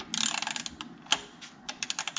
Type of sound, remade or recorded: recorded